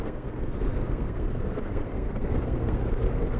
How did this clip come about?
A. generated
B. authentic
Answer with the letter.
A